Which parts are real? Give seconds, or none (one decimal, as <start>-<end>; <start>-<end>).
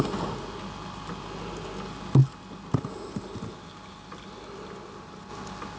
0.0-5.8